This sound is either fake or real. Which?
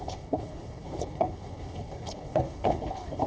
fake